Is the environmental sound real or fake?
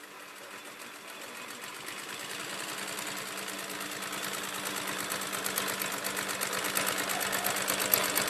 real